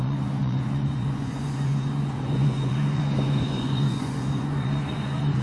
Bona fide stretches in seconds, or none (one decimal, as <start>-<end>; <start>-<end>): none